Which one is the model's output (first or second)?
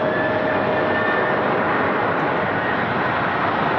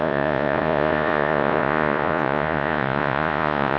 second